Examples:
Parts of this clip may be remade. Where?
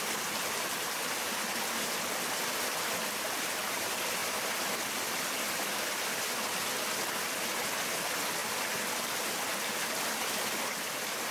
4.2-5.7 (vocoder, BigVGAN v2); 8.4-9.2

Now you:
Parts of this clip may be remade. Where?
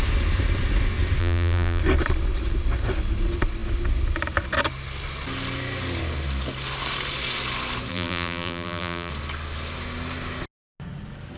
1.2-1.8 (vocoder, BigVGAN v2); 7.9-9.1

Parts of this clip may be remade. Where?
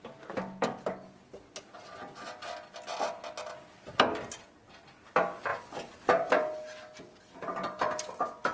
none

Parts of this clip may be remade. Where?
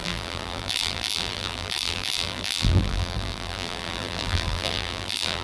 0.0-5.4 (vocoder, BigVGAN v2)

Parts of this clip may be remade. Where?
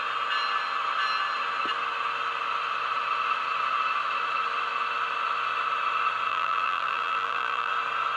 6.3-7.7 (vocoder, BigVGAN v2)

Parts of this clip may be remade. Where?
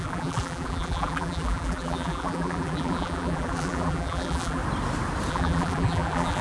0.0-4.6 (vocoder, BigVGAN v2); 5.3-6.4